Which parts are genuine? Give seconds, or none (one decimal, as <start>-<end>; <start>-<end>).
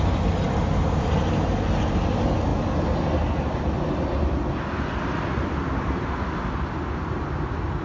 0.0-7.8